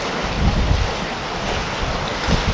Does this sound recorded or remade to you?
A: recorded